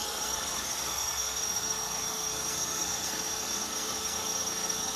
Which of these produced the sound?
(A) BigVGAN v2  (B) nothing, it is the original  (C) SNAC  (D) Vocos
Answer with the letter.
C